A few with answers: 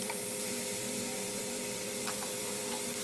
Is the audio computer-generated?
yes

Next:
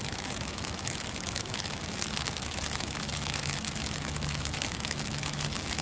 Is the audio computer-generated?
yes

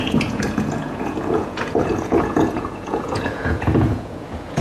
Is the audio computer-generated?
yes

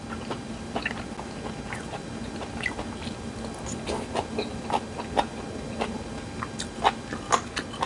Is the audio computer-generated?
no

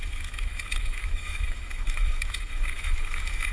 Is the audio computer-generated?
yes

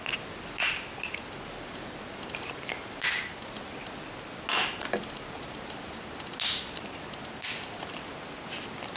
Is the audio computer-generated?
no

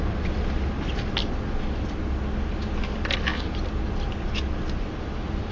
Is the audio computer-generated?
no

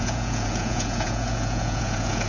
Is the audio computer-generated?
yes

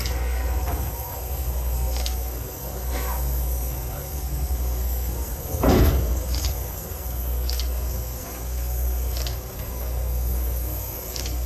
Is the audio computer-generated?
yes